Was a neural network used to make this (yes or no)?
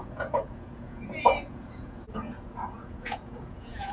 yes